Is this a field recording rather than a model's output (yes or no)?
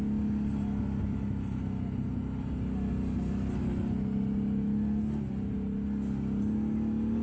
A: yes